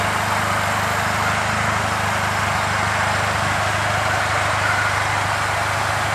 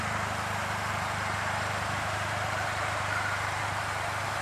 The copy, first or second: second